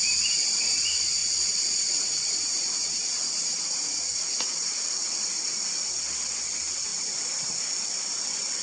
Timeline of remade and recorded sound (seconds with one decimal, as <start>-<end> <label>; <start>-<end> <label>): 0.0-1.2 recorded; 1.2-5.3 remade; 5.3-8.6 recorded

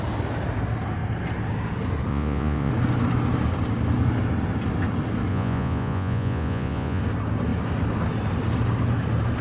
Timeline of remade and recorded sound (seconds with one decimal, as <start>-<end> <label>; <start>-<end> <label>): 0.0-2.1 recorded; 2.1-2.7 remade; 2.7-5.3 recorded; 5.3-7.0 remade; 7.0-9.4 recorded

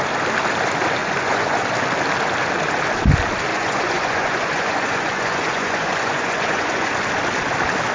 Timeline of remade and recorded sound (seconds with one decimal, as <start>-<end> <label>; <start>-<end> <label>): 0.0-1.0 recorded; 1.0-1.6 remade; 1.6-3.5 recorded; 3.5-6.9 remade; 6.9-7.9 recorded

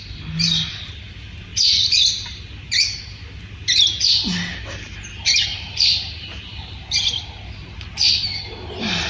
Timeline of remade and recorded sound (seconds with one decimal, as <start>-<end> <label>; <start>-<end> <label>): 0.0-9.1 recorded